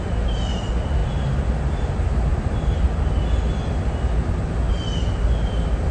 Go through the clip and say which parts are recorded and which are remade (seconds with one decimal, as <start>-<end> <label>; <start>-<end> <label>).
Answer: 0.0-1.0 recorded; 1.0-1.8 remade; 1.8-5.9 recorded